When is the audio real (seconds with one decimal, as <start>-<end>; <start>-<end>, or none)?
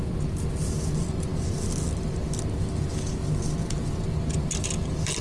0.0-5.2